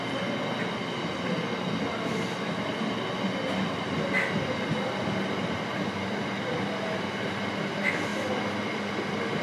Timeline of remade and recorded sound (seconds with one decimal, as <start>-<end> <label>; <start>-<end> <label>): 0.0-9.4 recorded